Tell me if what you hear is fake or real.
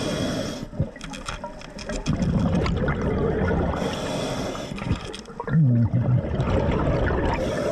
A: real